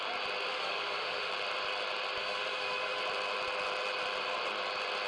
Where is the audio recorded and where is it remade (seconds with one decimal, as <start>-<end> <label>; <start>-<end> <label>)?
0.0-0.5 recorded; 0.5-1.3 remade; 1.3-2.2 recorded; 2.2-3.0 remade; 3.0-5.1 recorded